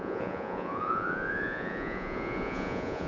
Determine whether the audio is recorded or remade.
remade